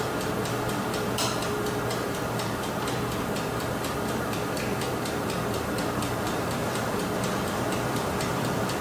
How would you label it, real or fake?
fake